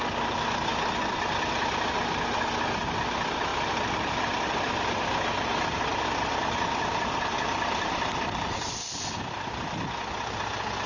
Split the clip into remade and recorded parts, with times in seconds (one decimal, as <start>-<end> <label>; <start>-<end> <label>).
0.0-3.5 recorded; 3.5-4.8 remade; 4.8-5.9 recorded; 5.9-10.2 remade; 10.2-10.9 recorded